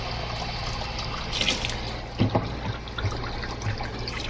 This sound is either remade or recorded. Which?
recorded